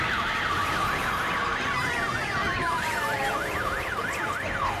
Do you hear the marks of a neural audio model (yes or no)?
no